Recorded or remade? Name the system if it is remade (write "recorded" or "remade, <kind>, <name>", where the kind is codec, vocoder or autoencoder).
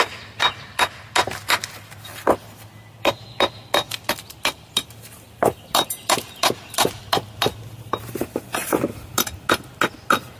recorded